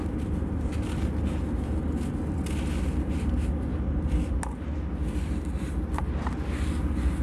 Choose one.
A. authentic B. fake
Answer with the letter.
A